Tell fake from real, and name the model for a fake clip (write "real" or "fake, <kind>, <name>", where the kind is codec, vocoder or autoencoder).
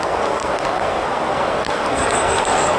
fake, codec, SNAC